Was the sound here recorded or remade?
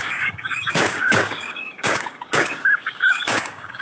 remade